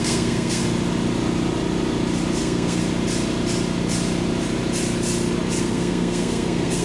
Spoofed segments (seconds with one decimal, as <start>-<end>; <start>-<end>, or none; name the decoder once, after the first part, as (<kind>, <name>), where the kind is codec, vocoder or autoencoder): 0.0-0.6 (codec, SNAC); 2.4-2.8; 5.6-6.8